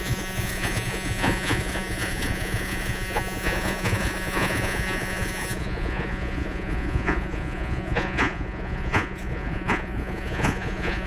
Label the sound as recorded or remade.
remade